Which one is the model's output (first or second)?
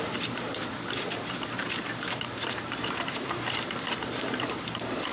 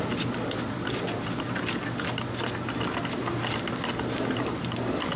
first